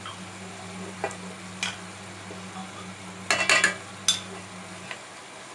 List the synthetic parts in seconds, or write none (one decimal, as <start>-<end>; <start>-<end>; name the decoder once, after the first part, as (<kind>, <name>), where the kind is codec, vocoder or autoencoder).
none